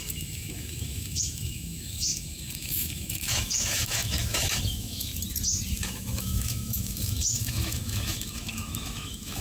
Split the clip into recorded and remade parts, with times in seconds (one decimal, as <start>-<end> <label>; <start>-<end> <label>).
0.0-5.1 remade; 5.1-5.8 recorded; 5.8-9.4 remade